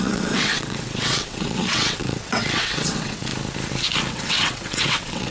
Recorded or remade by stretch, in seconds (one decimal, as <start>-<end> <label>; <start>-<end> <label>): 0.0-3.3 remade; 3.3-4.1 recorded; 4.1-5.3 remade